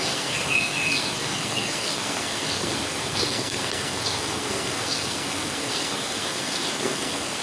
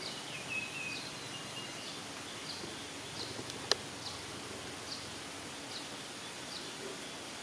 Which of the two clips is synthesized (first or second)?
first